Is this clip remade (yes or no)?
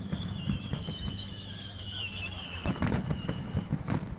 yes